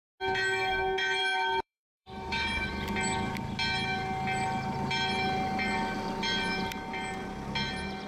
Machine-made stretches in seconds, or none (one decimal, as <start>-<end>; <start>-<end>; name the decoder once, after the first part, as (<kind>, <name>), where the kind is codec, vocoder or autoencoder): 1.2-2.7 (autoencoder, DAC-VAE)

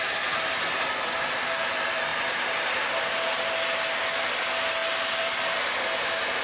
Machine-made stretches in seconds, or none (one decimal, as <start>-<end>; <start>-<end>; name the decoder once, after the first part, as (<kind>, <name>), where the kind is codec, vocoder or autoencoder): none

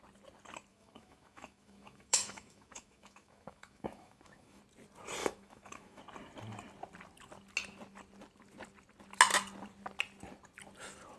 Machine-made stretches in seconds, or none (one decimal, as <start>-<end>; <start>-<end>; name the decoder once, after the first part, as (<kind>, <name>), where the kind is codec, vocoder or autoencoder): 0.7-4.6 (autoencoder, DAC-VAE); 5.2-6.0

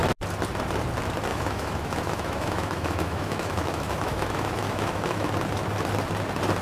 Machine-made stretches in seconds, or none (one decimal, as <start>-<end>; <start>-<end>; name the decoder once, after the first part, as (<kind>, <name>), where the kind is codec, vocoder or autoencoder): 1.3-5.3 (autoencoder, DAC-VAE)

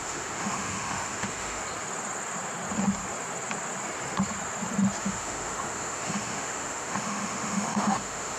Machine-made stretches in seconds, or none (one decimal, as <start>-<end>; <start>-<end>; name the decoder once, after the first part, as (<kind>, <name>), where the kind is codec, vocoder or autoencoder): 0.0-1.6 (autoencoder, DAC-VAE); 5.0-8.4

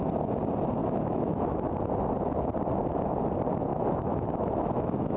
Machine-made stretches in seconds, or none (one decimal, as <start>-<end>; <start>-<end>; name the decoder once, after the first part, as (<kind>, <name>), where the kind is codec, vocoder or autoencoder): 0.8-1.7 (autoencoder, DAC-VAE); 3.7-5.2